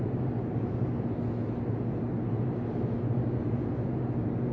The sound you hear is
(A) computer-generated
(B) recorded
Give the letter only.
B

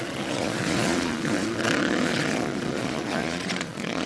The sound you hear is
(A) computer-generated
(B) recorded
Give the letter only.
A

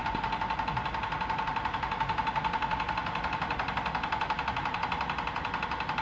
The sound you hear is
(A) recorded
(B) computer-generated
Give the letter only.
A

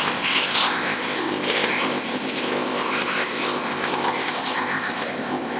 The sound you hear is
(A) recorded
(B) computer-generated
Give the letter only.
B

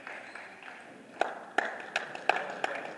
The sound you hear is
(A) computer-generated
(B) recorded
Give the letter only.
B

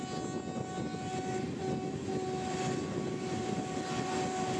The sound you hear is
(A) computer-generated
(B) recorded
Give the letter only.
B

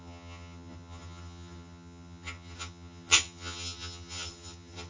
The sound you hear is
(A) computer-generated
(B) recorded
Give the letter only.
A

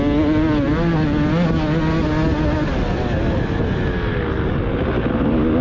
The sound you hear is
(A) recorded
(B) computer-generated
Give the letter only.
A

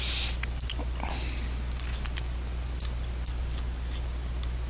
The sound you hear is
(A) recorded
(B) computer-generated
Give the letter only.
A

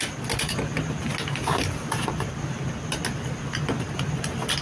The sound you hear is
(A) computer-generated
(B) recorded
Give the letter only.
B